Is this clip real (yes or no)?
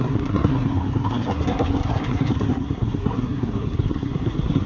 no